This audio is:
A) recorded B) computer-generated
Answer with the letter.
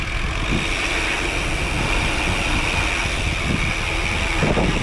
A